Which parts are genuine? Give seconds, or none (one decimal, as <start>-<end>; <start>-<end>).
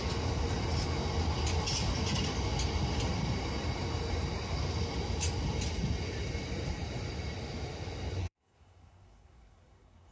0.0-8.2